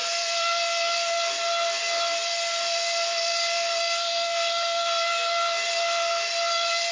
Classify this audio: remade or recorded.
recorded